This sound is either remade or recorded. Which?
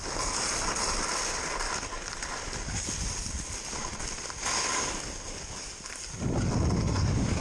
recorded